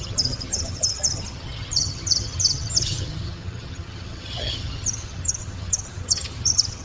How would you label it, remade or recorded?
remade